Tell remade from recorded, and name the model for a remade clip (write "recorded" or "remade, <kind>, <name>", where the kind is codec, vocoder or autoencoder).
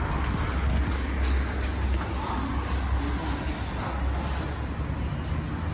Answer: recorded